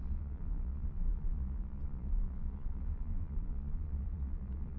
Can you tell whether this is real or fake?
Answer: fake